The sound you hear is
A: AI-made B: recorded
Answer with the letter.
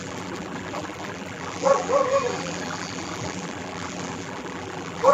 A